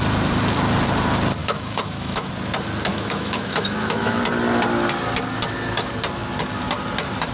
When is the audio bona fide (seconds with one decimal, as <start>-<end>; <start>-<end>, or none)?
0.0-1.4; 2.3-2.9; 4.2-7.3